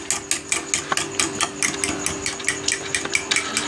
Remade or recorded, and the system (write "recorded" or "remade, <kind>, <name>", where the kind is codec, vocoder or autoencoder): recorded